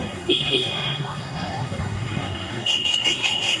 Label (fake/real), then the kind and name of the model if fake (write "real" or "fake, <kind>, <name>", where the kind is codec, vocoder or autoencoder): fake, codec, SNAC